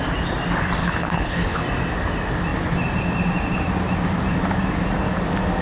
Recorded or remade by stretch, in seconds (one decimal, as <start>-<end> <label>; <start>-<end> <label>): 0.0-0.8 recorded; 0.8-1.6 remade; 1.6-5.6 recorded